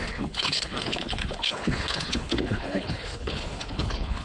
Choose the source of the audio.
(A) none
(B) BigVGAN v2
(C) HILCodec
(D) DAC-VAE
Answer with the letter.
C